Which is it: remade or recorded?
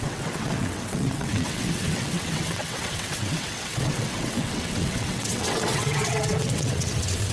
remade